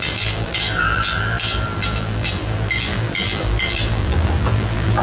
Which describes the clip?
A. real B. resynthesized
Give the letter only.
B